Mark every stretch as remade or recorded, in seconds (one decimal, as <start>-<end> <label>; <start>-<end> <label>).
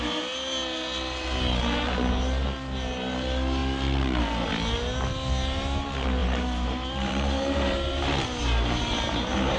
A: 0.0-6.2 recorded; 6.2-9.6 remade